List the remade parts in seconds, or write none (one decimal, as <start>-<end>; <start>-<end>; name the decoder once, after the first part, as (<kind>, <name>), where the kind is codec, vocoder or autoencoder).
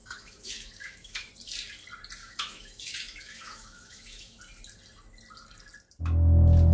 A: 0.0-1.3 (autoencoder, DAC-VAE); 2.2-4.4